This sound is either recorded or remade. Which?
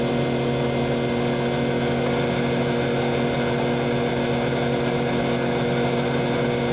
recorded